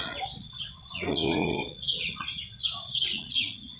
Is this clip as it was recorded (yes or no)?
no